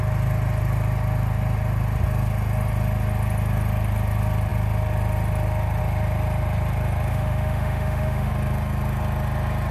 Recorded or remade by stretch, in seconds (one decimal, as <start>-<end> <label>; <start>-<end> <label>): 0.0-7.1 recorded; 7.1-8.3 remade; 8.3-9.7 recorded